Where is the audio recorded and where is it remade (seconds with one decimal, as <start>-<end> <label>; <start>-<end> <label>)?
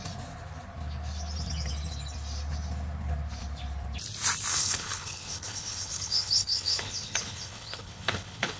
0.0-4.5 recorded; 4.5-8.6 remade